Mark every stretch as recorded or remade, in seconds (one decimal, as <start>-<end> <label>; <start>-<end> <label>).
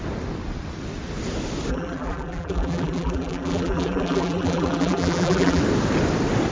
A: 0.0-1.7 recorded; 1.7-5.6 remade; 5.6-6.5 recorded